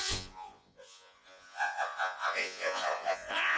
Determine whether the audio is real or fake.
fake